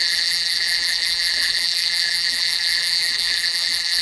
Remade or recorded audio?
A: remade